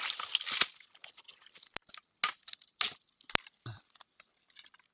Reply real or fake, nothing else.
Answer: real